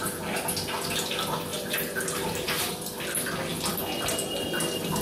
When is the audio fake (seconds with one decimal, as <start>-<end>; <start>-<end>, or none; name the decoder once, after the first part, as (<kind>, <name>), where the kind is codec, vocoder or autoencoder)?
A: 1.5-2.7 (vocoder, BigVGAN v2)